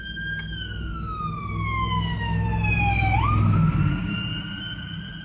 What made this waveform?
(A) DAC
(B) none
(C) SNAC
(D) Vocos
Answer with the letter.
B